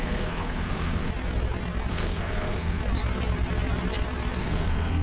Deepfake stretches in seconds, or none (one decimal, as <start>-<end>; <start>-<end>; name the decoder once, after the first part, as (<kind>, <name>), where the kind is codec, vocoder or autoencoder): 0.0-1.1 (codec, SNAC); 1.9-2.8; 4.4-5.0